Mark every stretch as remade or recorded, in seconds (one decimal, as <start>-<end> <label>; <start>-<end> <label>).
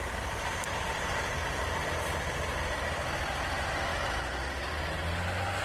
0.0-5.6 recorded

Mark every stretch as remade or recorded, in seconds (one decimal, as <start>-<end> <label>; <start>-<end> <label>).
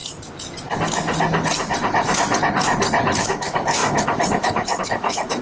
0.0-3.2 recorded; 3.2-5.4 remade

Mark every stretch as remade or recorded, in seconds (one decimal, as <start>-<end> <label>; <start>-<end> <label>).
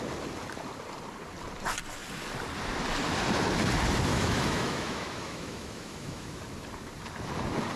0.0-4.1 recorded; 4.1-6.4 remade; 6.4-7.8 recorded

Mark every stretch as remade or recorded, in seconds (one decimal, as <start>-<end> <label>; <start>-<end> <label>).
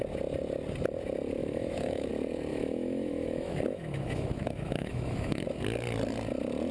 0.0-1.4 recorded; 1.4-2.1 remade; 2.1-2.5 recorded; 2.5-5.4 remade; 5.4-6.7 recorded